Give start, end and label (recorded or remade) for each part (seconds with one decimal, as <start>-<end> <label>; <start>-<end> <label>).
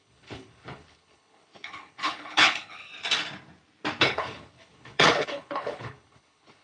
0.0-2.9 remade; 2.9-4.0 recorded; 4.0-6.6 remade